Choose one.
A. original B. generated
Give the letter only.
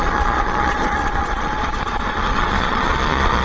B